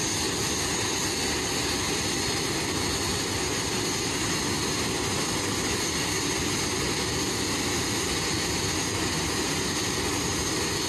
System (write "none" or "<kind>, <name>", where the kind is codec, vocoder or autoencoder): none